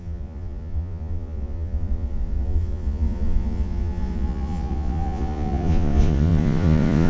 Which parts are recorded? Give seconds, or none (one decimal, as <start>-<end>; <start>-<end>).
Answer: none